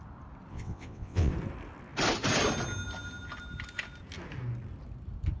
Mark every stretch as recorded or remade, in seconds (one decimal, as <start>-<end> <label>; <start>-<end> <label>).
0.0-0.5 recorded; 0.5-1.3 remade; 1.3-5.4 recorded